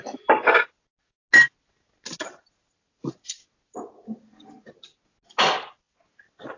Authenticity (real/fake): real